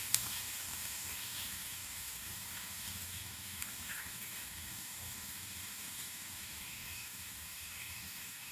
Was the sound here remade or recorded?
remade